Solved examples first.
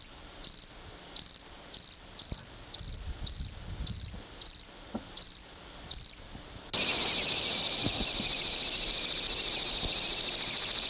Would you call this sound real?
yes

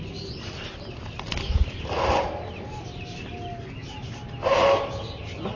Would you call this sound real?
yes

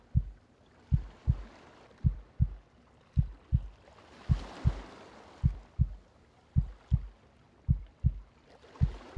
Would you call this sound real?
yes